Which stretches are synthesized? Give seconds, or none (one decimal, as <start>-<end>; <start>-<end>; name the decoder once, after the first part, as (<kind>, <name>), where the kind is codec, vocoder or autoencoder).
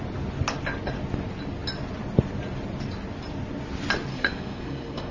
4.1-5.1 (codec, SNAC)